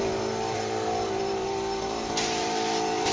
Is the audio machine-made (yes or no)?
yes